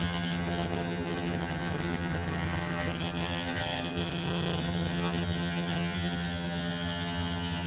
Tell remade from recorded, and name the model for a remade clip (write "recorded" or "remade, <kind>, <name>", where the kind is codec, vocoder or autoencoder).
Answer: remade, vocoder, HiFi-GAN